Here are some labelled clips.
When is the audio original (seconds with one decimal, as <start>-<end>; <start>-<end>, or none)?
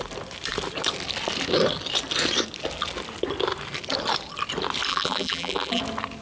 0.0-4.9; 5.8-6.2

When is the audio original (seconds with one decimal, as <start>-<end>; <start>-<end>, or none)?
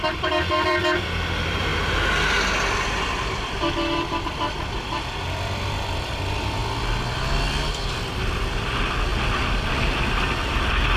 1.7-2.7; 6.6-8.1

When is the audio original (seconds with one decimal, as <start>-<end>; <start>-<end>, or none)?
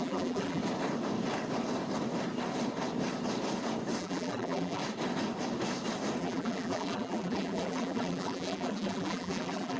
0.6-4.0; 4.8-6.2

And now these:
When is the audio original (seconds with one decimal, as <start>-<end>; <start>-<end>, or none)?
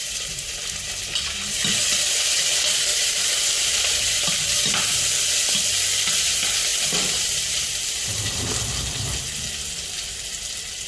0.9-2.9; 5.0-6.7; 8.5-10.9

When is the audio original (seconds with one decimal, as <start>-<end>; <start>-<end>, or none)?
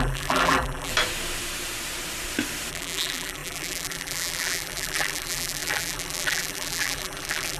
0.9-2.7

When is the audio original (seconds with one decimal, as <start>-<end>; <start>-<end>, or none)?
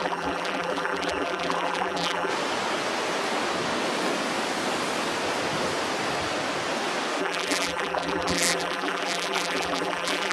2.3-7.2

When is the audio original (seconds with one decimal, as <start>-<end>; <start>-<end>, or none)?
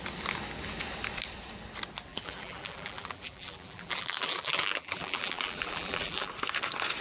0.0-2.1; 6.3-7.0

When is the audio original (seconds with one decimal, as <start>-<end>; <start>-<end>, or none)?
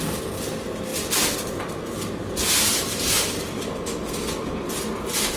0.0-5.4